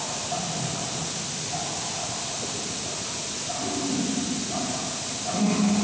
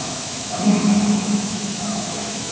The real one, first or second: first